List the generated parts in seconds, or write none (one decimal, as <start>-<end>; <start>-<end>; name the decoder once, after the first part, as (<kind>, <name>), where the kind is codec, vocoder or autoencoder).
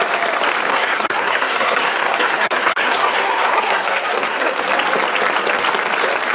0.7-4.5 (codec, SNAC)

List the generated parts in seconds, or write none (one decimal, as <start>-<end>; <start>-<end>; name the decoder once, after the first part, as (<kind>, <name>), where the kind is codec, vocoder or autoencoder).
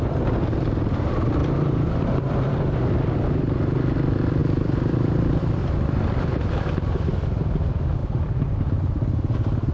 0.0-9.7 (vocoder, BigVGAN v2)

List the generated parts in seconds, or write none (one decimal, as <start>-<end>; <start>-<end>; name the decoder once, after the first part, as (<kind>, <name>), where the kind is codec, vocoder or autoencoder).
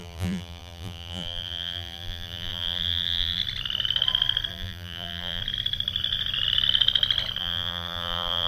0.0-3.4 (vocoder, BigVGAN v2); 4.5-5.4; 7.4-8.5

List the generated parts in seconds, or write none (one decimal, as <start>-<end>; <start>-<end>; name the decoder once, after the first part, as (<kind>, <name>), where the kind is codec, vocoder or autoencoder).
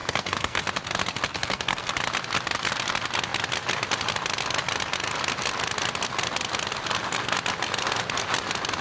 0.0-0.6 (codec, SNAC); 1.3-1.9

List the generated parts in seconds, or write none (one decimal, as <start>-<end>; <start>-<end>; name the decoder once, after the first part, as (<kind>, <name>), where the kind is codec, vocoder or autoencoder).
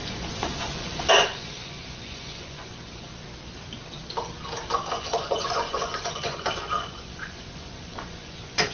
0.0-3.1 (vocoder, Vocos); 4.9-8.7